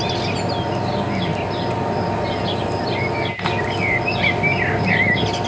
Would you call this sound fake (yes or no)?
no